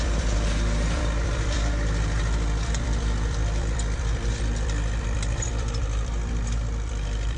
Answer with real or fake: fake